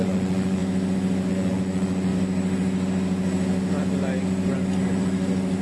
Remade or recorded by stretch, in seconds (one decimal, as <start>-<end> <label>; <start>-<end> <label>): 0.0-0.6 remade; 0.6-1.3 recorded; 1.3-2.1 remade; 2.1-5.6 recorded